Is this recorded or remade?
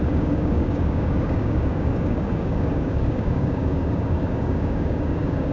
remade